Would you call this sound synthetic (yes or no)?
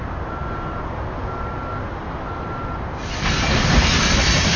no